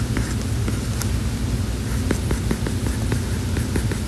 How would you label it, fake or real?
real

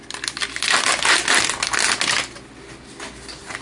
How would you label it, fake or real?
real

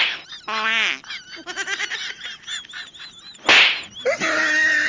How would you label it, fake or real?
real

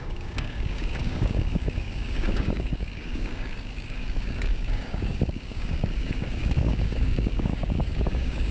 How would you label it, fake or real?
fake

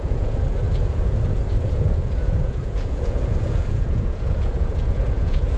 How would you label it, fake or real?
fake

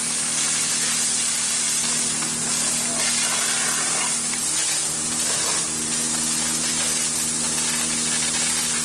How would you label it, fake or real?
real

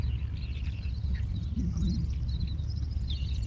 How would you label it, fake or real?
real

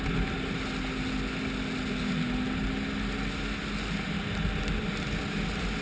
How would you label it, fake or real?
real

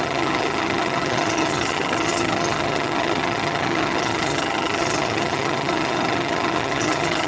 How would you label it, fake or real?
fake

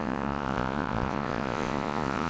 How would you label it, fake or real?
fake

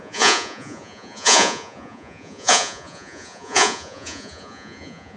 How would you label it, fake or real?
fake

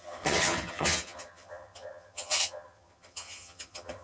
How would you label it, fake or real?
fake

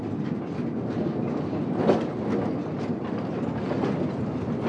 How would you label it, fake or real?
real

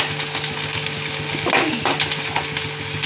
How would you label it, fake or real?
real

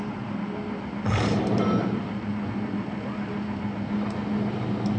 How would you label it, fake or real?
real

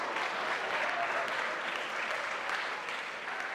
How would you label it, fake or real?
real